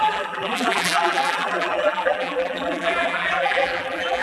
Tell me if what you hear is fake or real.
fake